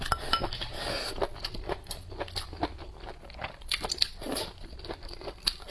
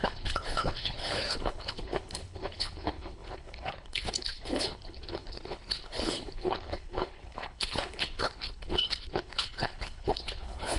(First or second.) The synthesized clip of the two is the second